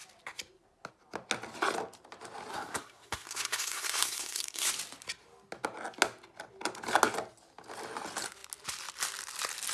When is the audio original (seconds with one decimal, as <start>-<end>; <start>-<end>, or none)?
0.0-2.5; 4.7-9.7